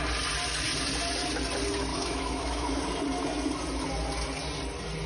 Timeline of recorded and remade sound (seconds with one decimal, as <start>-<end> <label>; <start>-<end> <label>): 0.0-1.9 recorded; 1.9-2.8 remade; 2.8-5.1 recorded